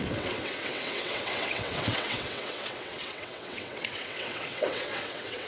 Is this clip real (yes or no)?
no